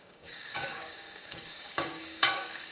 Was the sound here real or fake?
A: fake